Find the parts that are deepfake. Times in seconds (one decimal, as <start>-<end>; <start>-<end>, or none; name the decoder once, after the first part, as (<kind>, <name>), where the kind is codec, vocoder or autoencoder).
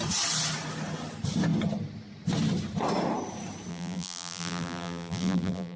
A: 3.7-5.8 (vocoder, BigVGAN v2)